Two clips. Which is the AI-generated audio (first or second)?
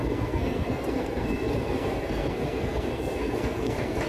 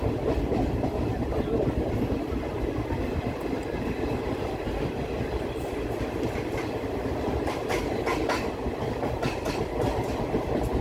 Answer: first